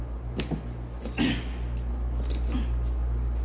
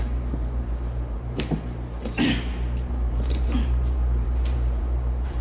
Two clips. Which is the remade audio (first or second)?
second